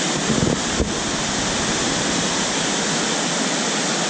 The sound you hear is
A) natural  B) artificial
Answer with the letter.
A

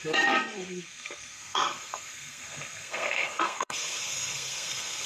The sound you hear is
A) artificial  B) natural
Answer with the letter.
A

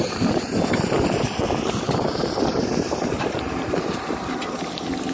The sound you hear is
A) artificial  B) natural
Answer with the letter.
B